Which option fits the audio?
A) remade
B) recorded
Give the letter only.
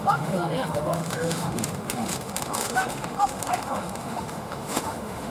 A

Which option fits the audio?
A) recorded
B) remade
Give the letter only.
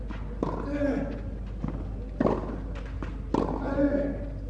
A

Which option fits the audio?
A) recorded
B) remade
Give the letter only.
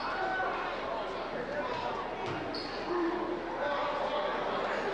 A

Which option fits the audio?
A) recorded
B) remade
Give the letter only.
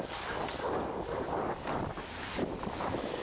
A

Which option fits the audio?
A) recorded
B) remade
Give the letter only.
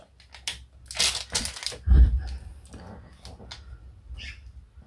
A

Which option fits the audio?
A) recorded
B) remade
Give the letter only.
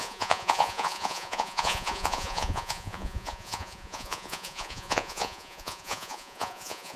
B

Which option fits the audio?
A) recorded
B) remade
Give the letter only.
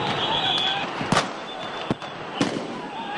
A